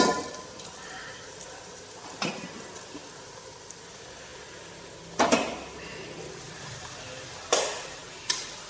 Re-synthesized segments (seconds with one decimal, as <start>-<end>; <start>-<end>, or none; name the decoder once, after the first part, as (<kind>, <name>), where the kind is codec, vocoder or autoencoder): 0.0-3.0 (vocoder, BigVGAN v2); 3.6-4.3; 6.2-8.0